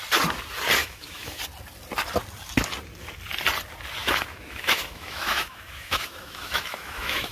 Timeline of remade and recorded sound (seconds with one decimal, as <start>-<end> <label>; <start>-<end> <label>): 0.0-0.8 recorded; 0.8-1.4 remade; 1.4-4.0 recorded; 4.0-7.3 remade